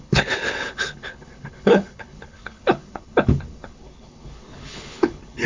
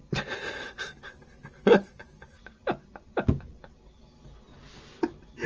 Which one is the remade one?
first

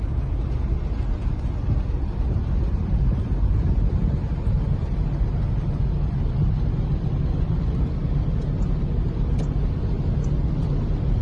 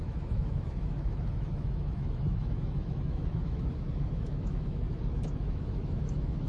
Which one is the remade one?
second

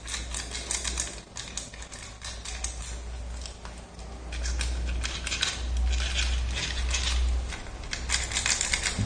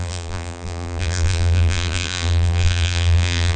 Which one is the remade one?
second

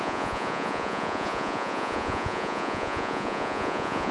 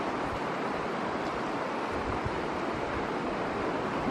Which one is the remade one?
first